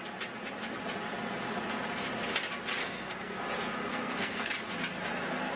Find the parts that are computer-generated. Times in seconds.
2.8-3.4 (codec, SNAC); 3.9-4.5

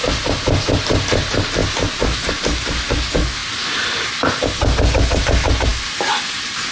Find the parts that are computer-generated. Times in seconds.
none

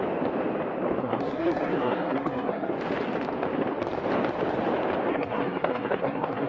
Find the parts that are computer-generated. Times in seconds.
1.0-2.7 (codec, SNAC); 5.1-6.5

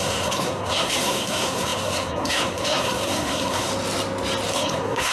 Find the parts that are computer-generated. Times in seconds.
0.0-3.7 (codec, SNAC); 4.5-5.1

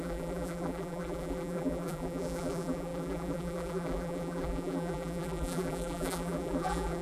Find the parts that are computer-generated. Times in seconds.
0.0-7.0 (vocoder, BigVGAN v2)